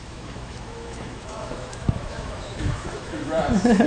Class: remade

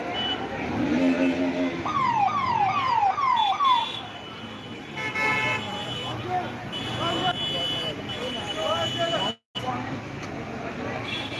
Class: recorded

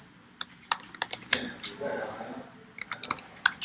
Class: recorded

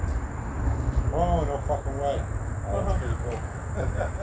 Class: recorded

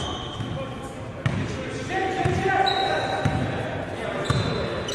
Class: recorded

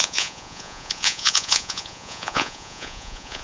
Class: remade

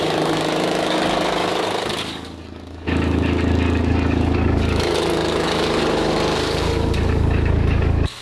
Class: remade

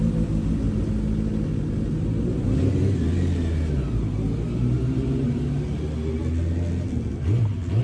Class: recorded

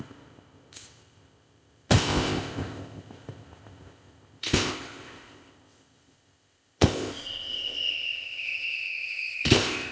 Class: remade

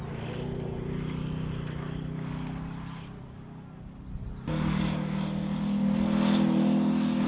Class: recorded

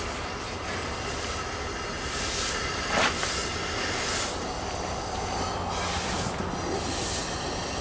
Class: recorded